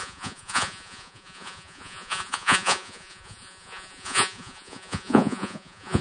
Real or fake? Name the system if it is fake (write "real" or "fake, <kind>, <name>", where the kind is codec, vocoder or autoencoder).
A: fake, vocoder, Vocos